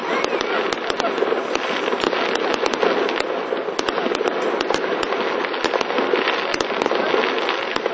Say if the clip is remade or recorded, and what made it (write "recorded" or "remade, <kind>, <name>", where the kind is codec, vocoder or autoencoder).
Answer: recorded